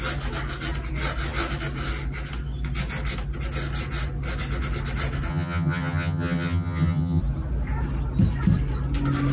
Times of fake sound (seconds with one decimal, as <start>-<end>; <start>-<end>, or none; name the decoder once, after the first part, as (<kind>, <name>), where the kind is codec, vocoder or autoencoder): 5.3-7.2 (vocoder, HiFi-GAN)